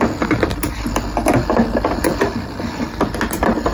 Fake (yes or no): no